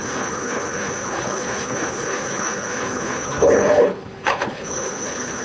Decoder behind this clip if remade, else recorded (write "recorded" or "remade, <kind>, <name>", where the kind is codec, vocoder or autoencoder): remade, codec, HILCodec